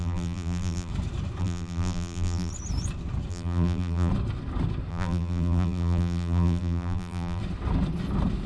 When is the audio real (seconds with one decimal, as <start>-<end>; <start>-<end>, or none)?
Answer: 0.9-1.4; 2.5-3.3; 4.1-4.9; 7.4-8.5